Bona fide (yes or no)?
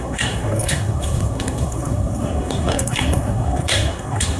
no